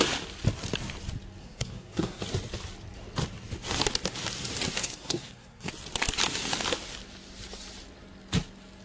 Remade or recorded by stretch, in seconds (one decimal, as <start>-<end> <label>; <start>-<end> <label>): 0.0-1.4 recorded; 1.4-2.2 remade; 2.2-4.8 recorded; 4.8-5.7 remade; 5.7-8.8 recorded